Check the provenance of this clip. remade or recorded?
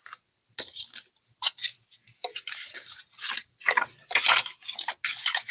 recorded